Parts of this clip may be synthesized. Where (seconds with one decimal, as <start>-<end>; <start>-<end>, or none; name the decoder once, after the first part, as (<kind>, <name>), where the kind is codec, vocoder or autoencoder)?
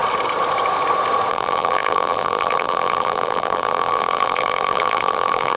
1.3-5.6 (vocoder, BigVGAN v2)